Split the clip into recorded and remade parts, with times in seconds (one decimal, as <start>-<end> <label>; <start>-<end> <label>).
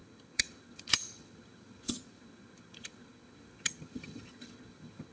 0.0-5.1 remade